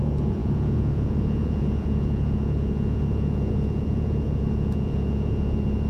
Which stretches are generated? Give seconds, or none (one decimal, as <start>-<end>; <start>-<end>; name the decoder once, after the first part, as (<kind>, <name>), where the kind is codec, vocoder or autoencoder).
0.0-5.9 (vocoder, Vocos)